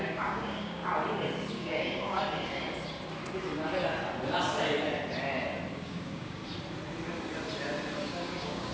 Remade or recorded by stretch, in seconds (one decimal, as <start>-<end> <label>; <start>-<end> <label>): 0.0-0.8 remade; 0.8-1.5 recorded; 1.5-2.2 remade; 2.2-5.7 recorded; 5.7-6.4 remade; 6.4-8.0 recorded; 8.0-8.7 remade